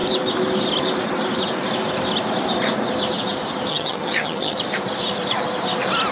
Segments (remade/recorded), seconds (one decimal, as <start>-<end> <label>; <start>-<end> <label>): 0.0-3.7 recorded; 3.7-4.6 remade; 4.6-6.1 recorded